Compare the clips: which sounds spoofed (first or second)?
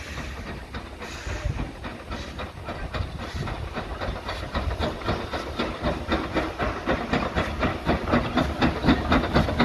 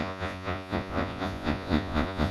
second